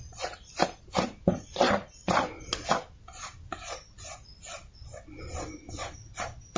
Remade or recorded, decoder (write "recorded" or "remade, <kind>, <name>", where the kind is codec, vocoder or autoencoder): recorded